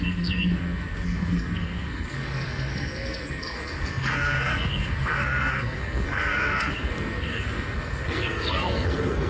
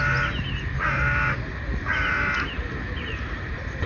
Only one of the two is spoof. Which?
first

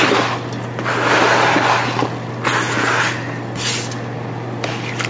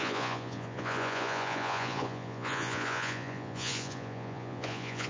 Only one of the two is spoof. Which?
second